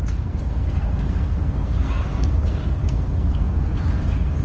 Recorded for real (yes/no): no